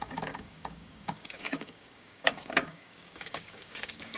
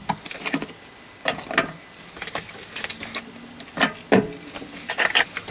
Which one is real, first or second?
second